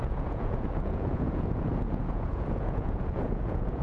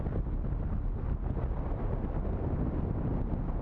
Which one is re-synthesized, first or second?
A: first